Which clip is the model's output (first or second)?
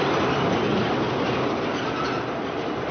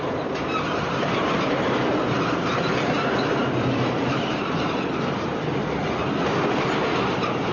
first